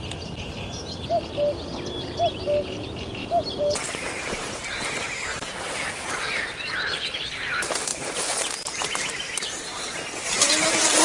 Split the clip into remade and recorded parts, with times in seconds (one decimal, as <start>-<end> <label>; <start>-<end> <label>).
0.0-3.2 recorded; 3.2-5.9 remade; 5.9-7.9 recorded; 7.9-9.6 remade; 9.6-11.0 recorded